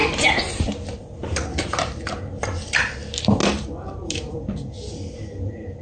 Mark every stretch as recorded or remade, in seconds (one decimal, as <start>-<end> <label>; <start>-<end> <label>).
0.0-1.2 recorded; 1.2-2.0 remade; 2.0-3.4 recorded; 3.4-4.7 remade; 4.7-5.8 recorded